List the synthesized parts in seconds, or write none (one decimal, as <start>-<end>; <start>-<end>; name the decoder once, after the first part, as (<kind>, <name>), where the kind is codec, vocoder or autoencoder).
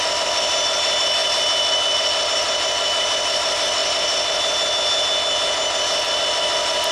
none